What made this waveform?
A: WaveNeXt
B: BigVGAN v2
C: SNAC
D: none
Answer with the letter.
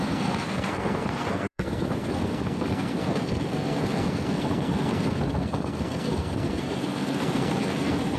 C